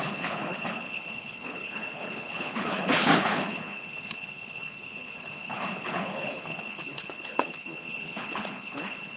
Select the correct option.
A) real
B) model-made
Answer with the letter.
B